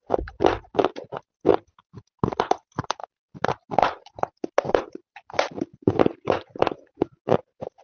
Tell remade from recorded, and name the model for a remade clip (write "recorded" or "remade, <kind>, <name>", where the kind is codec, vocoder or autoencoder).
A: recorded